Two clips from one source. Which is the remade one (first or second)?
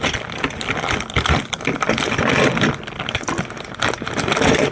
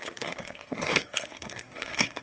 second